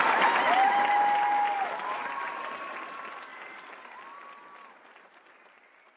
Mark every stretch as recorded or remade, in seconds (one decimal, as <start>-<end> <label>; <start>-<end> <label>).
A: 0.0-6.0 recorded